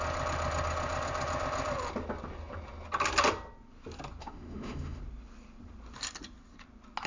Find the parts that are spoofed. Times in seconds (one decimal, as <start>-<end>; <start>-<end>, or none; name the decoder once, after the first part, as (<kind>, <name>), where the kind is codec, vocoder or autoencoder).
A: 4.2-5.0 (autoencoder, DAC-VAE)